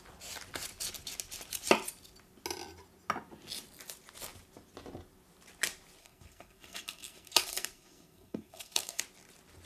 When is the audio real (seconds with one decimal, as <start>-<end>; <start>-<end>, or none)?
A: 0.0-6.0; 9.0-9.7

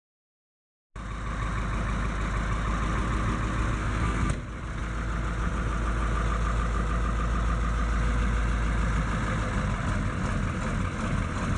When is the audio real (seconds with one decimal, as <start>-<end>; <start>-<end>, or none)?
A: 0.0-3.8; 4.3-11.6